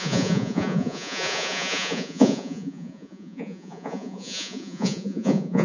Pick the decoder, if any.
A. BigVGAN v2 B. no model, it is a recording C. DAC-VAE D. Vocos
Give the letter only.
D